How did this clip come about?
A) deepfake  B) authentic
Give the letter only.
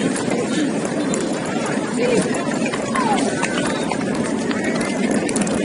A